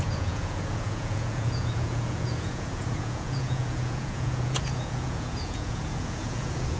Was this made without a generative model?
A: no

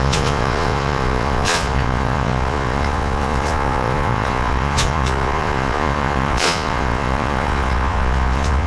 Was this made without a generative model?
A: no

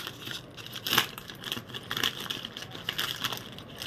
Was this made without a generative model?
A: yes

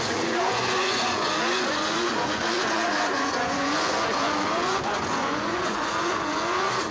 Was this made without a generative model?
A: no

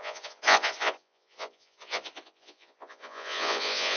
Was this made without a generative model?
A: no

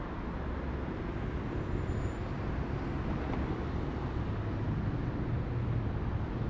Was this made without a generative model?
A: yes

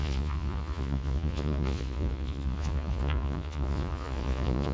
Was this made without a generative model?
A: no